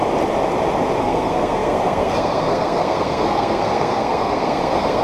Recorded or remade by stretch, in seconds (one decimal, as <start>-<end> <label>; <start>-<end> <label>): 0.0-1.0 recorded; 1.0-5.0 remade